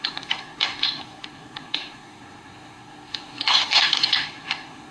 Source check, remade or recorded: remade